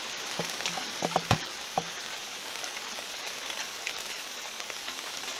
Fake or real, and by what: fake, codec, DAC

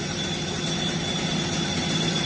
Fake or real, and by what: real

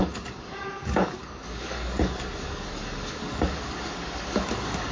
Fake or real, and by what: fake, codec, DAC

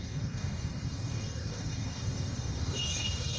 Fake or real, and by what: fake, codec, DAC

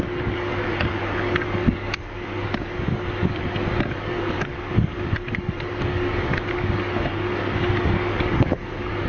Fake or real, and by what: fake, codec, DAC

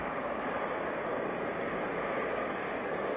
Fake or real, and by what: fake, codec, DAC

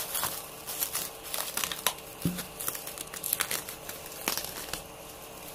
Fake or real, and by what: real